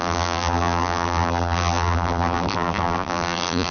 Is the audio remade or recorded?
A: remade